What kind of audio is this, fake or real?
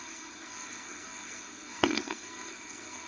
fake